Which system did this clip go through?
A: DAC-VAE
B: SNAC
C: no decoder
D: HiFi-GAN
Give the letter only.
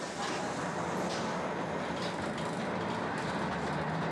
C